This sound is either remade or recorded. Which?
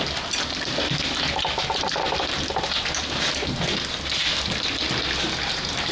recorded